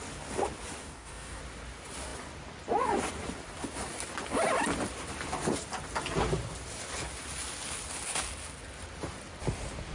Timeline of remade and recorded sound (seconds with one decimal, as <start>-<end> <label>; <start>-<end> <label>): 0.0-0.8 recorded; 0.8-1.4 remade; 1.4-9.9 recorded